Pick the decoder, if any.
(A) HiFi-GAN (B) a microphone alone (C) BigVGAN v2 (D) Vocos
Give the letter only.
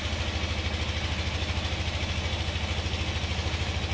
B